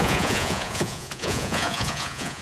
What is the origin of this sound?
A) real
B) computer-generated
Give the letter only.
B